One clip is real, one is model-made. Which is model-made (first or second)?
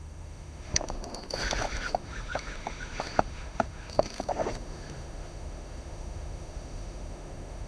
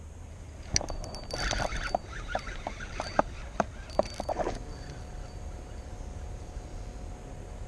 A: first